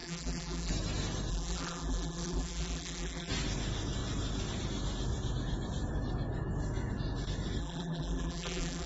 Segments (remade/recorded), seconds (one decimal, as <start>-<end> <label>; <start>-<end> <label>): 0.0-0.7 remade; 0.7-1.3 recorded; 1.3-3.3 remade; 3.3-7.6 recorded; 7.6-8.9 remade